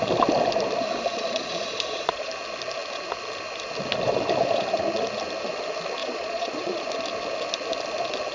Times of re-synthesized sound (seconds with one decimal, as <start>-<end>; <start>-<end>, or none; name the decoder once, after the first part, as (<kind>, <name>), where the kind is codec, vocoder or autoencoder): 1.1-2.3 (vocoder, Vocos); 6.0-6.8